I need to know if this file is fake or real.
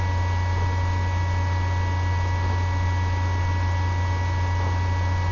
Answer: real